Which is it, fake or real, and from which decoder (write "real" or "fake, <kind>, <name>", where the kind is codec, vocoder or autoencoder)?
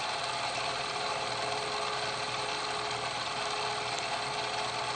real